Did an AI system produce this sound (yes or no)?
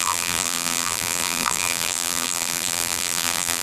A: yes